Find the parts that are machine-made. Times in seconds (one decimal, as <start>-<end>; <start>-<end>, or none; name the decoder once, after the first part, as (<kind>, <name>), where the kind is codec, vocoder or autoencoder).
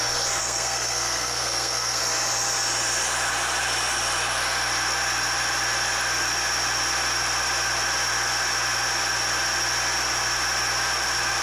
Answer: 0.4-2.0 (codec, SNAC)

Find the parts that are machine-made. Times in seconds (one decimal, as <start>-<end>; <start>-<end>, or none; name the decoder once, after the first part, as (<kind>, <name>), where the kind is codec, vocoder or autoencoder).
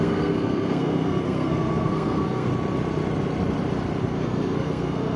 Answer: 0.0-2.5 (codec, SNAC); 4.0-5.2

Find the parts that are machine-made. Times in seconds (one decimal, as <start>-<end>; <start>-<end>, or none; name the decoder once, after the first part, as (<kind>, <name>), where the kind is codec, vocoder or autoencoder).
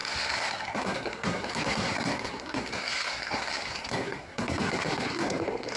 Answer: 0.0-5.8 (codec, SNAC)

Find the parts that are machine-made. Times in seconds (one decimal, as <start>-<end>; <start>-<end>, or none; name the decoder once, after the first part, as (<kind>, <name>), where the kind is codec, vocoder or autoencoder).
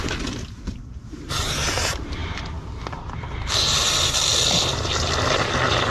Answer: none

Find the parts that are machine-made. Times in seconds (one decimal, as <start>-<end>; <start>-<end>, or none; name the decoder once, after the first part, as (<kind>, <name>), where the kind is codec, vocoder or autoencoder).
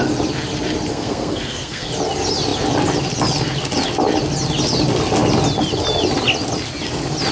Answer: 0.9-1.9 (codec, SNAC)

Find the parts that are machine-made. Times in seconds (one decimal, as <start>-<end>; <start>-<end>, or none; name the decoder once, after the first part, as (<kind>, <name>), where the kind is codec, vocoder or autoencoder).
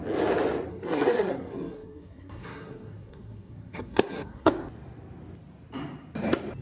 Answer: 0.7-4.5 (codec, SNAC)